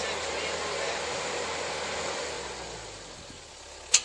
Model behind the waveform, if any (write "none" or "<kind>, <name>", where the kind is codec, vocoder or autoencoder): none